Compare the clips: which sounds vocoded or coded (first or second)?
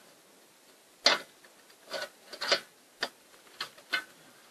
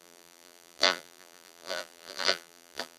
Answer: second